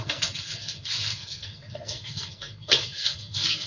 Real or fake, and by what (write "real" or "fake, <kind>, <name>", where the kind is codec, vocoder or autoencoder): fake, codec, SNAC